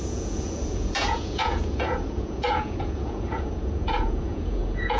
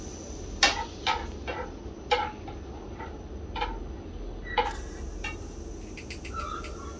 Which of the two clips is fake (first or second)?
first